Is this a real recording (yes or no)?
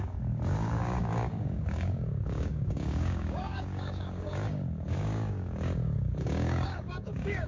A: no